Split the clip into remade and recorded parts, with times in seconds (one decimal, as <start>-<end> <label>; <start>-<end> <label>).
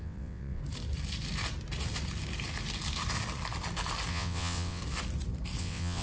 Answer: 0.0-0.6 remade; 0.6-4.1 recorded; 4.1-4.8 remade; 4.8-5.6 recorded; 5.6-6.0 remade